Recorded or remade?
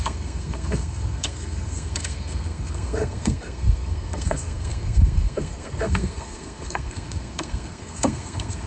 remade